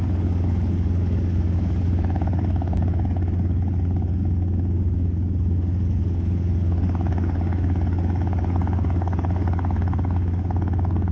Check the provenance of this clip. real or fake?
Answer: fake